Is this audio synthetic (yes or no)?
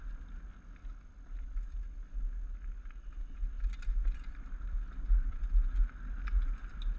no